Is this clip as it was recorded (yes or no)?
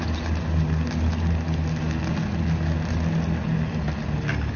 yes